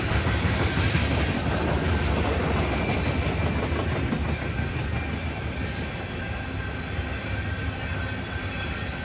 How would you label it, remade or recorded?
recorded